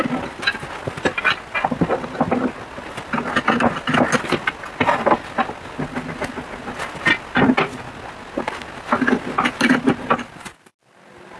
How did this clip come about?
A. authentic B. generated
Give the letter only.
A